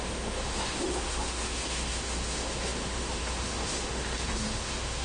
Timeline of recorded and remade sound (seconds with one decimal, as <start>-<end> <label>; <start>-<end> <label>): 0.0-5.0 remade